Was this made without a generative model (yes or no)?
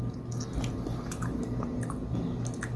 yes